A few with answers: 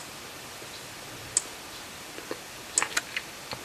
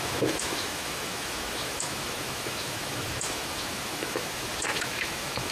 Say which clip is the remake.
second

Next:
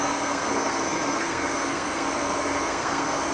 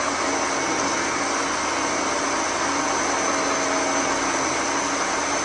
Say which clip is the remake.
first